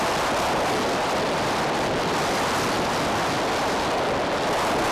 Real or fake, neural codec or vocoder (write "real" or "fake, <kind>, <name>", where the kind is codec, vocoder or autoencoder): real